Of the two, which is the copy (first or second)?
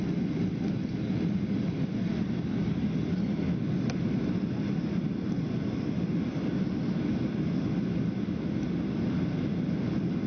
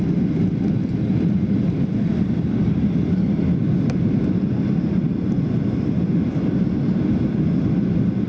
second